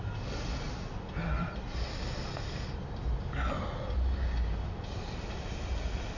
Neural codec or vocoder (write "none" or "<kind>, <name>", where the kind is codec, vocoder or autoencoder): none